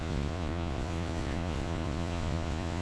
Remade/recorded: remade